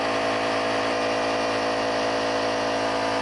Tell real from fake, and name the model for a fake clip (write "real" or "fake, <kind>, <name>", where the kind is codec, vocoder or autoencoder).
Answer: real